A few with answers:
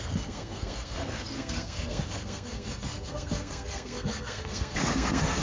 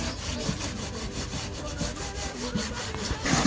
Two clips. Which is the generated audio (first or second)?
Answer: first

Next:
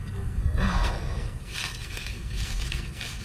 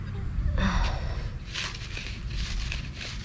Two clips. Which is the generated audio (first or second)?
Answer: first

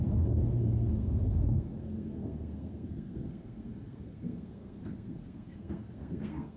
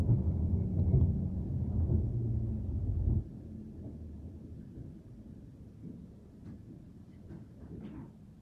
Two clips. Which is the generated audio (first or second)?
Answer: first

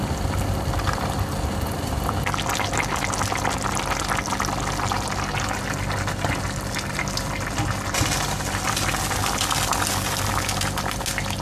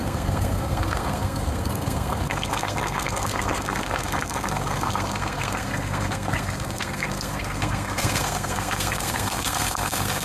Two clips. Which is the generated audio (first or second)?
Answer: second